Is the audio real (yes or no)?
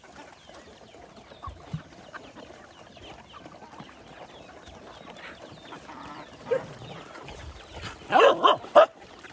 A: yes